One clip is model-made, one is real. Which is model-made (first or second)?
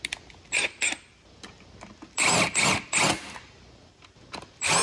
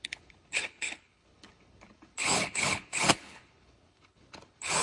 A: second